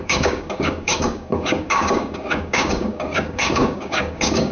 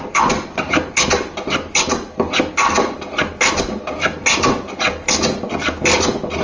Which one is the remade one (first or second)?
first